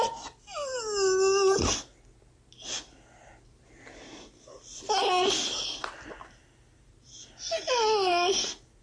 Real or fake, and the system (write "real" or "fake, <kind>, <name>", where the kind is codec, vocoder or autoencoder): real